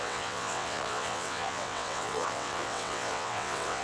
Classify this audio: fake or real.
fake